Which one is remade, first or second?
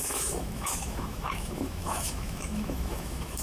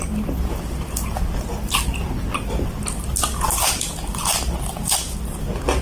first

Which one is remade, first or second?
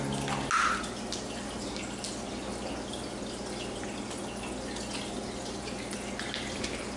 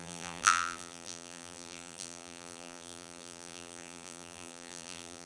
second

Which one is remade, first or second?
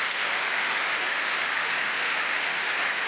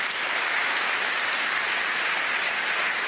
first